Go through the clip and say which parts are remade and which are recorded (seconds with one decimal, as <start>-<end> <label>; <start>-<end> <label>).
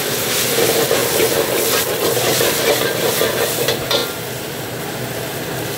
0.0-5.8 recorded